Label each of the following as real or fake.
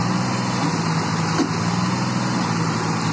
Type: real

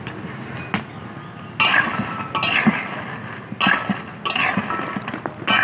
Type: real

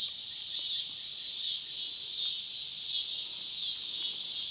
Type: real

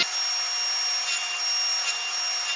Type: real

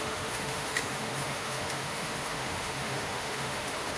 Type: fake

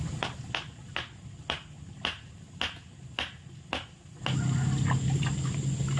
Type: real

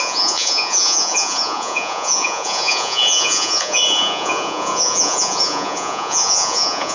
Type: fake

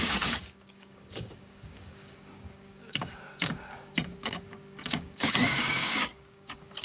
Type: fake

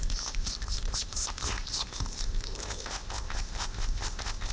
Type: fake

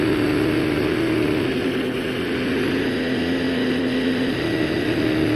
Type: real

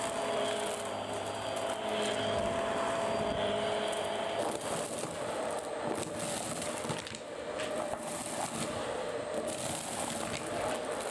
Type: real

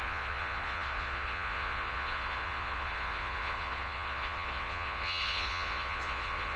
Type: fake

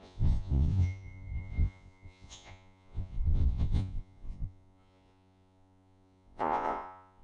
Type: fake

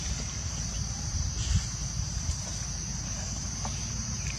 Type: fake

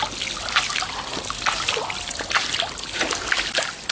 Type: real